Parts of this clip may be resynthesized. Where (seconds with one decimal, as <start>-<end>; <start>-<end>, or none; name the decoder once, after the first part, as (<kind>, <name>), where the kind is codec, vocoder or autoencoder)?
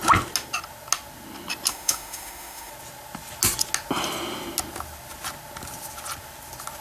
1.7-2.7 (autoencoder, DAC-VAE)